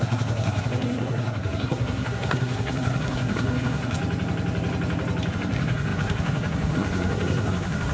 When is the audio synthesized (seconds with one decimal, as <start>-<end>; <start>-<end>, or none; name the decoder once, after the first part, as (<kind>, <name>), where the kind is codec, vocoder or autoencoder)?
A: 0.0-4.0 (codec, SNAC); 5.3-7.9